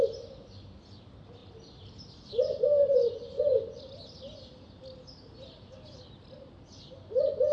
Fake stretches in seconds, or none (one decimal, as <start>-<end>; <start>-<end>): 1.4-5.9